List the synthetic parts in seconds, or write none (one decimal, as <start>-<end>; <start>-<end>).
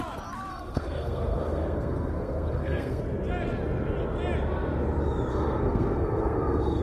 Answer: 0.5-3.0; 5.3-6.8